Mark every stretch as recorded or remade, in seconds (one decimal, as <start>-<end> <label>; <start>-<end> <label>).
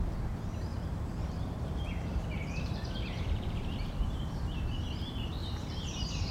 0.0-0.7 recorded; 0.7-4.5 remade; 4.5-5.4 recorded; 5.4-6.3 remade